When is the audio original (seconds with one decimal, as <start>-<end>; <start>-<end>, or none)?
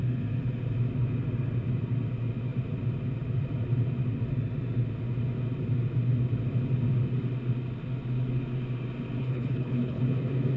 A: 0.0-9.2; 10.0-10.6